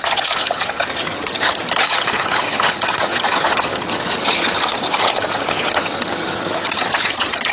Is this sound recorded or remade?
remade